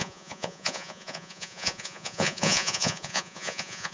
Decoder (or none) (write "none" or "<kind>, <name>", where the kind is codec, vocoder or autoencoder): vocoder, Vocos